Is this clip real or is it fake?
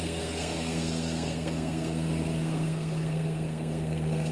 fake